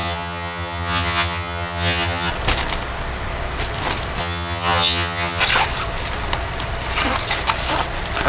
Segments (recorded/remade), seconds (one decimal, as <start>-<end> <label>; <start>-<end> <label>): 0.0-2.3 remade; 2.3-4.2 recorded; 4.2-5.4 remade; 5.4-8.3 recorded